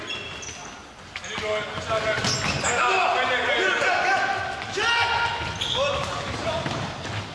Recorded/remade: recorded